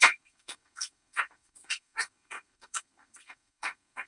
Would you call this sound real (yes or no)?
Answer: no